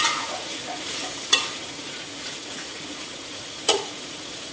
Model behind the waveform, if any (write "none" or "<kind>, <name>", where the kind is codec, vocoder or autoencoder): vocoder, Vocos